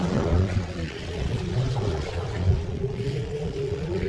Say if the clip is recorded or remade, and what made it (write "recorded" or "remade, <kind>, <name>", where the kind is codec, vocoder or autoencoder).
remade, vocoder, Vocos